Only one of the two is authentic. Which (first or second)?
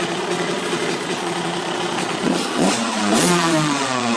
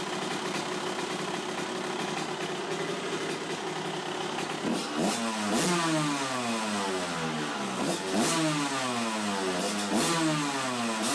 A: second